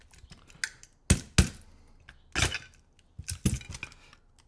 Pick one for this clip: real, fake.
real